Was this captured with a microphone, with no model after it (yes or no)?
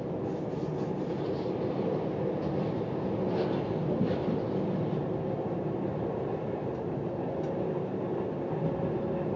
yes